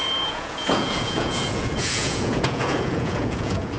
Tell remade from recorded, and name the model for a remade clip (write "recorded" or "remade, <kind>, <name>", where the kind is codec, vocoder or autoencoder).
remade, vocoder, Vocos